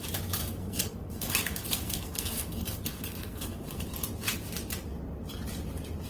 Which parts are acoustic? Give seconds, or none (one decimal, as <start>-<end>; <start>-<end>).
0.0-0.4; 3.8-6.1

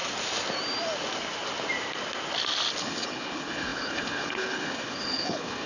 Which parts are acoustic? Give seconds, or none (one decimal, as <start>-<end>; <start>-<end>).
0.0-2.8

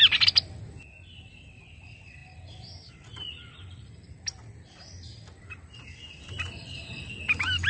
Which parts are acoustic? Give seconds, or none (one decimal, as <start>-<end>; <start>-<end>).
0.0-7.7

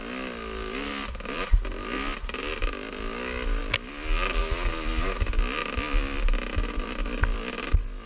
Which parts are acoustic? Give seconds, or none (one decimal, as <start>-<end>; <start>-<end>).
0.0-8.1

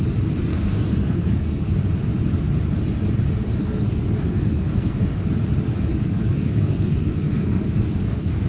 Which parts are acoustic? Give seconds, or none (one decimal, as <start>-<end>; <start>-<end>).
0.0-0.5; 1.8-3.6; 5.3-5.9

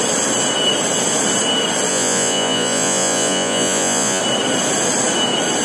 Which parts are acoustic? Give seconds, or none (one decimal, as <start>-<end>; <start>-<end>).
0.0-1.9; 4.2-5.6

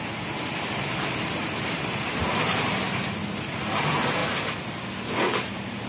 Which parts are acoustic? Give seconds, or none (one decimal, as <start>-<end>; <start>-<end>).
0.0-5.9